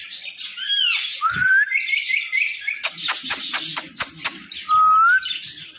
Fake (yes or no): no